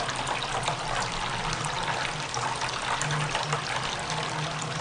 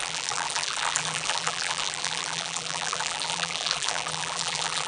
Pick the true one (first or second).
first